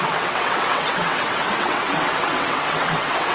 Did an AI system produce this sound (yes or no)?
yes